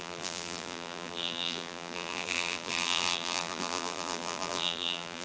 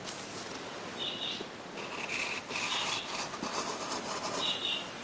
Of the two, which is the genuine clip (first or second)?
second